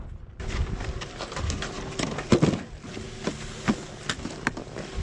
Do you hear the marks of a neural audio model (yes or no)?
no